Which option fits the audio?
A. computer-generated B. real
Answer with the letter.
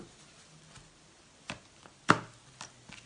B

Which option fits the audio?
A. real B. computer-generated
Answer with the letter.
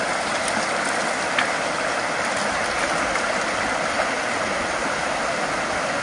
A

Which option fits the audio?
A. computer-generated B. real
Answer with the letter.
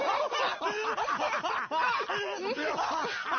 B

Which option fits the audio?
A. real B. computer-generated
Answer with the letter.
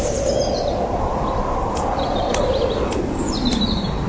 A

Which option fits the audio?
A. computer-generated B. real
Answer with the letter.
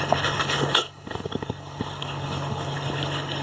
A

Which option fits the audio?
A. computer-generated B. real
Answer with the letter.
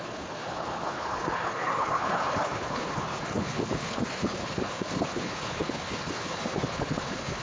A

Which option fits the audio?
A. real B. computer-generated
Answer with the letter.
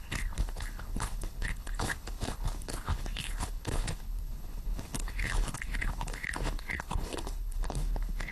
B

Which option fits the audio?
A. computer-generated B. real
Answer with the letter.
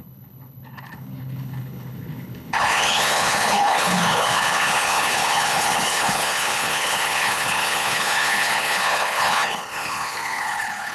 A